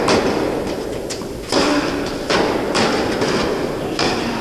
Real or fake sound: real